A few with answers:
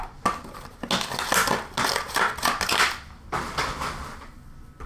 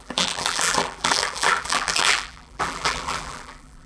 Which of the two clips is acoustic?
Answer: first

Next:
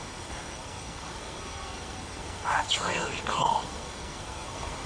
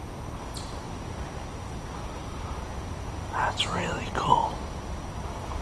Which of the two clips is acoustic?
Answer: second